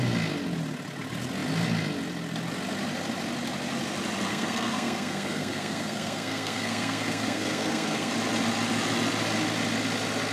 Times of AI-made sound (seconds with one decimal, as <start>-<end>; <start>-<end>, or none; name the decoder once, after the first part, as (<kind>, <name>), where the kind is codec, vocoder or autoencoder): 4.3-8.1 (codec, SNAC)